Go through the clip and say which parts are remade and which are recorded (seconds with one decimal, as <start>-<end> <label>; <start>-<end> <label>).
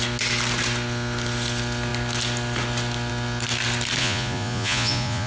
0.0-4.0 recorded; 4.0-5.3 remade